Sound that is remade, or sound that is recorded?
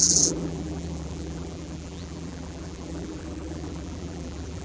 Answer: remade